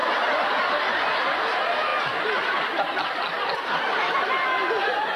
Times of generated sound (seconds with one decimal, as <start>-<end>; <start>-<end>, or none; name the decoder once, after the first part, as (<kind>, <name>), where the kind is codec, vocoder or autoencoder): 0.0-0.7 (vocoder, BigVGAN v2)